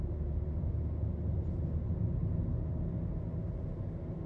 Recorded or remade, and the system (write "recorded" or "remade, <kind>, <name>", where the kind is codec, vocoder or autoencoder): recorded